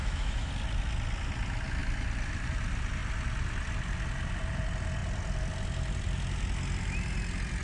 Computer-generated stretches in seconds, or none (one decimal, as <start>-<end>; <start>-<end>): 0.0-0.5